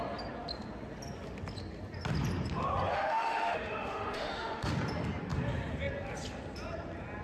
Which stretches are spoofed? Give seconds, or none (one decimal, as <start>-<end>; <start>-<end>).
2.9-4.7